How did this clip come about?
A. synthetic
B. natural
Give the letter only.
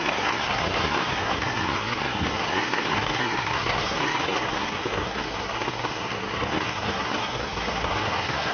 A